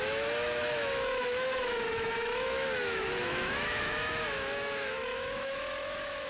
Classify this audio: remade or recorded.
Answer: remade